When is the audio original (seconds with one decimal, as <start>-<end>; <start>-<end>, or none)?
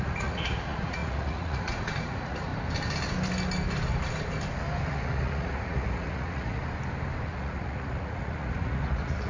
2.5-4.9; 6.6-7.3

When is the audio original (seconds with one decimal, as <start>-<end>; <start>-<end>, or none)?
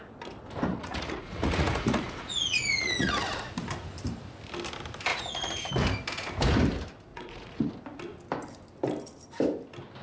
0.0-0.7; 3.5-5.1; 5.7-7.1; 7.7-10.0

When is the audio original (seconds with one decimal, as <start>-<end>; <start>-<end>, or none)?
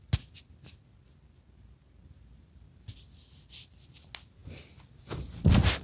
0.0-5.8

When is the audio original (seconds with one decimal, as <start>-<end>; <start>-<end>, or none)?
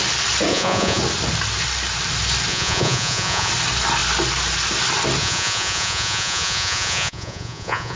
0.0-0.5; 1.0-2.5; 3.5-5.2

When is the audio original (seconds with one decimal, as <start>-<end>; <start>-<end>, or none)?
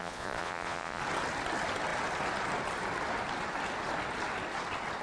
1.0-5.0